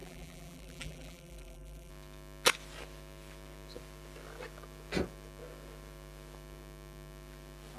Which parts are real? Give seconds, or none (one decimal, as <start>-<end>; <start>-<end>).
1.9-7.8